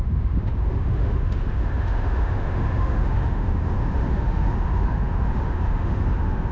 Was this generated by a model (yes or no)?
yes